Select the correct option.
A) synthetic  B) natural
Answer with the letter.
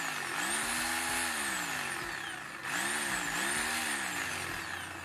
B